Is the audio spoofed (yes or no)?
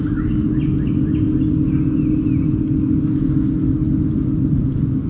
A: no